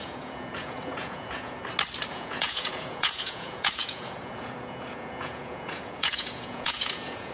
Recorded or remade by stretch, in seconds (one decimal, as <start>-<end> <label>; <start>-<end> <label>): 0.0-1.6 remade; 1.6-2.1 recorded; 2.1-7.3 remade

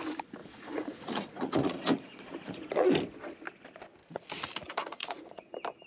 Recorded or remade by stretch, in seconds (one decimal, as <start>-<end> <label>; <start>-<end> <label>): 0.0-0.4 recorded; 0.4-2.9 remade; 2.9-4.0 recorded; 4.0-5.4 remade; 5.4-5.9 recorded

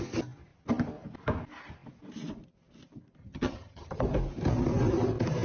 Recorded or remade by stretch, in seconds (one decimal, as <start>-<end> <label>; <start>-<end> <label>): 0.0-3.2 recorded; 3.2-4.0 remade; 4.0-5.4 recorded

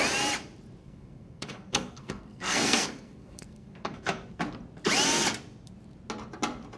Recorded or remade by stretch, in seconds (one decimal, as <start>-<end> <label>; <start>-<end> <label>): 0.0-0.8 recorded; 0.8-4.4 remade; 4.4-6.8 recorded

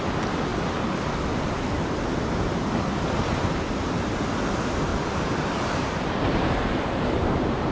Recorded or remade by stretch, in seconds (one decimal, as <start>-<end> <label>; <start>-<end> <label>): 0.0-4.9 recorded; 4.9-7.7 remade

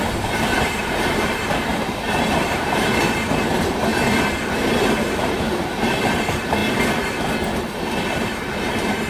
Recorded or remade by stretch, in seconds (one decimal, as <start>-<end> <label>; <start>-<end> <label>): 0.0-3.9 remade; 3.9-4.5 recorded; 4.5-6.6 remade; 6.6-8.0 recorded; 8.0-9.1 remade

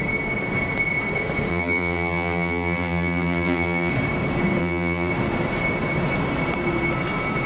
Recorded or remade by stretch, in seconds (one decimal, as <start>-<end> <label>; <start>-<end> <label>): 0.0-1.5 recorded; 1.5-3.9 remade; 3.9-4.6 recorded; 4.6-5.1 remade; 5.1-7.5 recorded